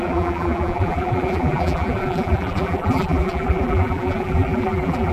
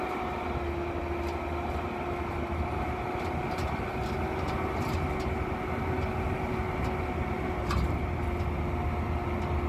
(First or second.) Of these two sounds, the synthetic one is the first